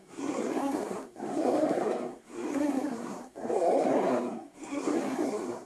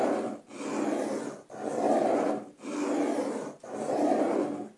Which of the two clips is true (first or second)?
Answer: second